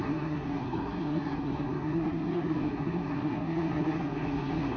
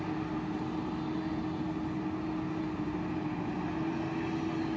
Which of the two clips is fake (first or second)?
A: first